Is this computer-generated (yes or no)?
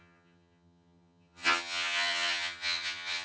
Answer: yes